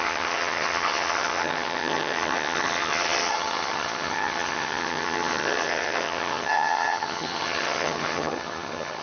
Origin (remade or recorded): remade